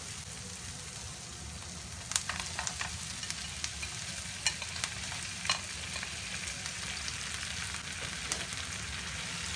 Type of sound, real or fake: real